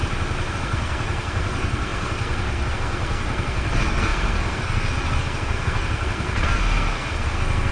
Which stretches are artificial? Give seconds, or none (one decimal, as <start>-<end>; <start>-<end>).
0.5-7.7